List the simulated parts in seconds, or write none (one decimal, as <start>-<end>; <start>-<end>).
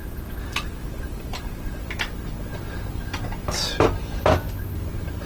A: 0.0-1.8